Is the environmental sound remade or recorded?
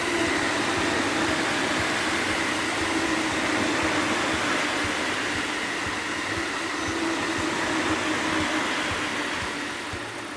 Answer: recorded